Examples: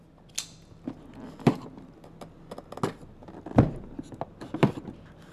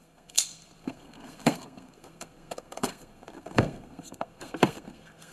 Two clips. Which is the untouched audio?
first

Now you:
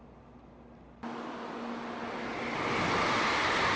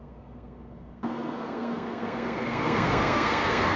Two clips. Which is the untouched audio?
first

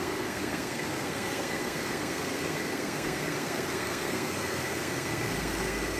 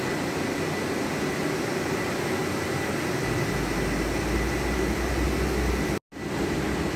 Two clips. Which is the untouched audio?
second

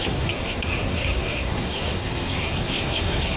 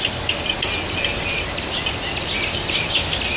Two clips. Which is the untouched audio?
second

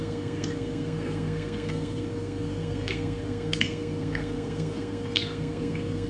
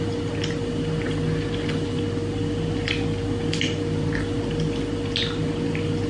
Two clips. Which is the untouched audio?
second